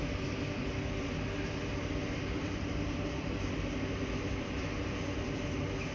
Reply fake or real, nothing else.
fake